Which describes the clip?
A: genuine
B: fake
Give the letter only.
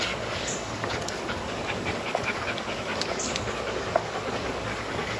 B